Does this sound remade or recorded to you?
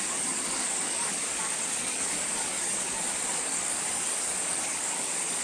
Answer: remade